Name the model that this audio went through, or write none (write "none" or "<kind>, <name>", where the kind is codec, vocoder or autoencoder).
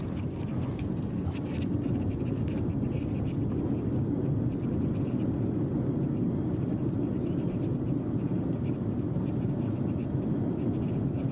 none